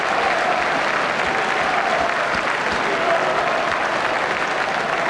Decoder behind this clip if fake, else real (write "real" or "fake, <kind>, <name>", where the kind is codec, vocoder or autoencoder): real